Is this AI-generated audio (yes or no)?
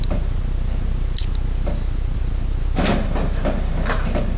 no